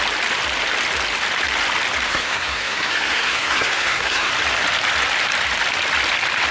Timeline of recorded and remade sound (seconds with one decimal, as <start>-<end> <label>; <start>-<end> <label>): 0.0-2.1 recorded; 2.1-4.3 remade; 4.3-6.5 recorded